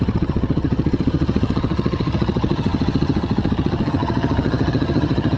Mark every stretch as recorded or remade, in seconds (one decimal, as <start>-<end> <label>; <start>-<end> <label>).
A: 0.0-5.4 remade

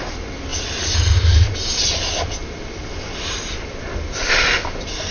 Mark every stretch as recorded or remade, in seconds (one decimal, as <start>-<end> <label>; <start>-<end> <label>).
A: 0.0-5.1 recorded